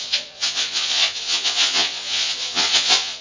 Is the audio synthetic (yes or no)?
yes